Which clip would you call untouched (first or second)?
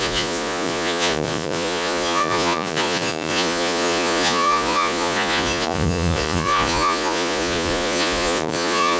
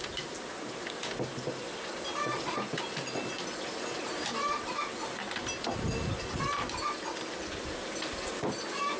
second